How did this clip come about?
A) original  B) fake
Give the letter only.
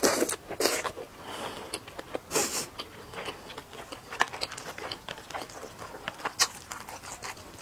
A